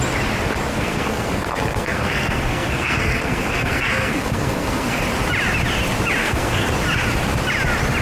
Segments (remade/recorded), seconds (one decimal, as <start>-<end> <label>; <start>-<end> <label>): 0.0-0.7 recorded; 0.7-5.0 remade; 5.0-6.2 recorded; 6.2-6.7 remade; 6.7-8.0 recorded